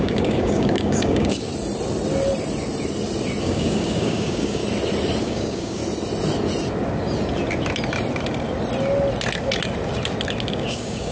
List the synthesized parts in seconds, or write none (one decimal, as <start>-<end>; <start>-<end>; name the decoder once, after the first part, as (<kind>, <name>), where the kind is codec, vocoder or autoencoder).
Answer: 0.0-1.5 (codec, DAC); 3.4-4.6; 5.2-5.8; 10.5-11.1